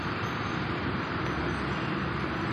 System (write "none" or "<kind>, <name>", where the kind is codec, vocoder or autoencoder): none